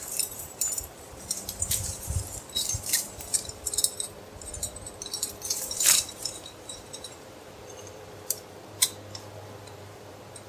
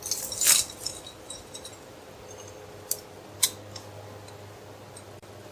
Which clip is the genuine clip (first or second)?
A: second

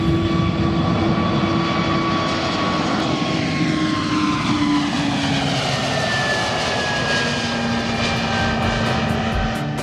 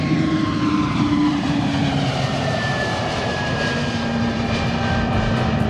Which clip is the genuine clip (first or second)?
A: first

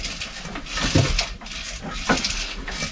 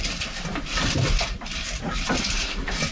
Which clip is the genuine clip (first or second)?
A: first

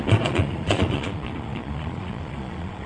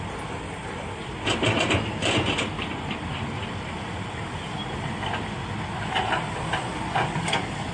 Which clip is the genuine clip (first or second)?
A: second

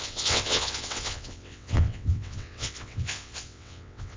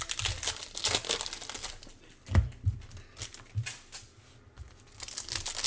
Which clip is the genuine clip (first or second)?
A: second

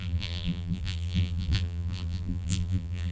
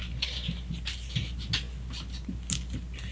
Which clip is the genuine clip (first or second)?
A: second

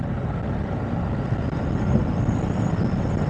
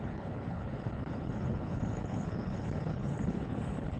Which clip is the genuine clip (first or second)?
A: first